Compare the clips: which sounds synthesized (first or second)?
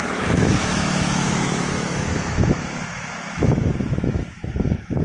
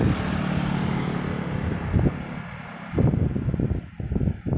first